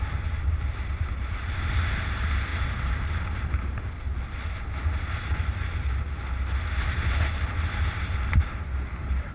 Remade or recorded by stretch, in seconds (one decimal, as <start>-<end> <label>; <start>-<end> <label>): 0.0-9.3 recorded